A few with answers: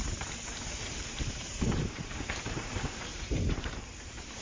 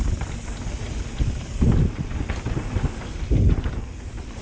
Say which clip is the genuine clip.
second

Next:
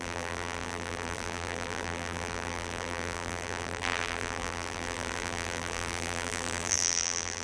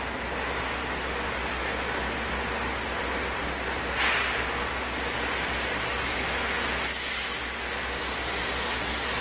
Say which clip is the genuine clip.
second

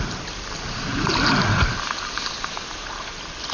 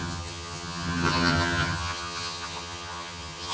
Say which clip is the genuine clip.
first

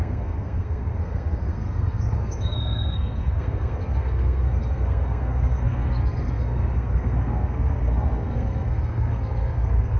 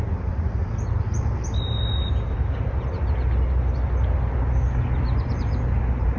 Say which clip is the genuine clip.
second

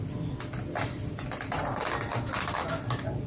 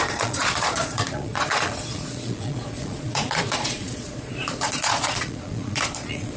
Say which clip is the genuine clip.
first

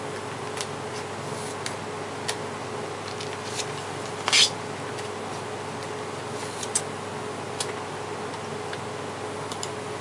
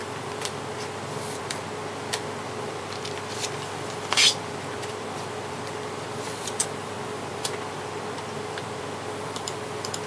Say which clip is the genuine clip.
first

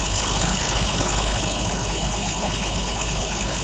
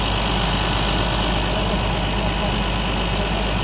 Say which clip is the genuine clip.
second